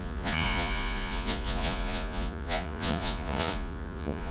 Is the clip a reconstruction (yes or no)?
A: yes